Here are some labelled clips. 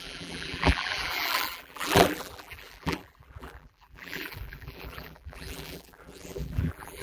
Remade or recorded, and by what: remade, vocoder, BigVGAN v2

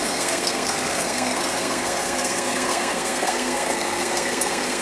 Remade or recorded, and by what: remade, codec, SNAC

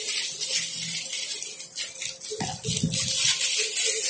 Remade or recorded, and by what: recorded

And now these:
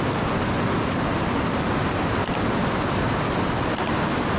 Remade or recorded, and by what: recorded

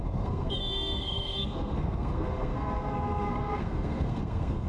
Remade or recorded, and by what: remade, codec, SNAC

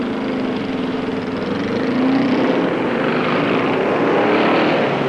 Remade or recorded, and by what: recorded